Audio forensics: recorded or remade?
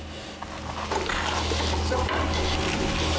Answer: recorded